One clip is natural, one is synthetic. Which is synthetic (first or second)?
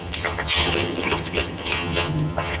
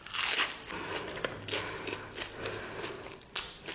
first